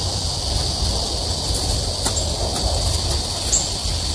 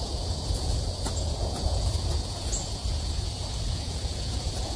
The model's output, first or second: second